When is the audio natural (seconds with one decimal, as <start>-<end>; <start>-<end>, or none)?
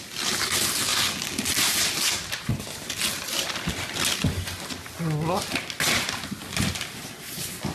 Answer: 0.0-7.7